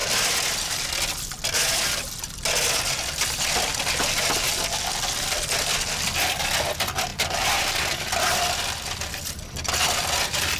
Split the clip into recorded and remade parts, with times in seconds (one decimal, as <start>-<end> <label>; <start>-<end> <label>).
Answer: 0.0-10.6 recorded